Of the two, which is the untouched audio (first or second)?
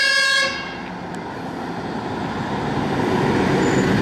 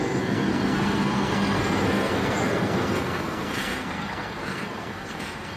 first